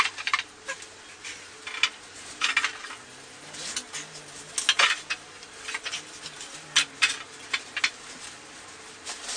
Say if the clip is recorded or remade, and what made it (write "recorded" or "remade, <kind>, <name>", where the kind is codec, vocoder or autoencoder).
recorded